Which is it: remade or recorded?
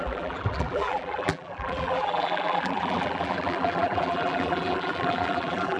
remade